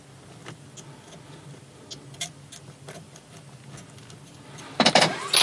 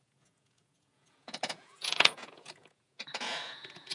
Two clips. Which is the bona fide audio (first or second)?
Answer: first